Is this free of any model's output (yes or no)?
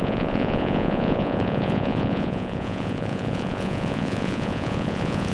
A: no